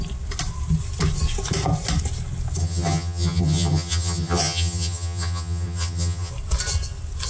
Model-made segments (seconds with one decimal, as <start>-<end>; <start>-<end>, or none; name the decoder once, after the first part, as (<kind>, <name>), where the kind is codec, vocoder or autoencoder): 2.6-6.3 (vocoder, HiFi-GAN)